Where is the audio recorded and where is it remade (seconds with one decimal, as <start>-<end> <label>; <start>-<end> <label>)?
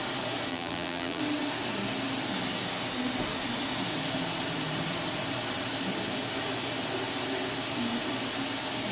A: 0.0-0.5 recorded; 0.5-1.2 remade; 1.2-8.9 recorded